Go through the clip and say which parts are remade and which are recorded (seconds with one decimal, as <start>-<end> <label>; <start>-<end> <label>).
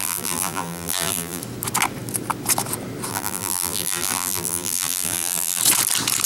0.0-1.4 remade; 1.4-3.1 recorded; 3.1-5.6 remade; 5.6-6.3 recorded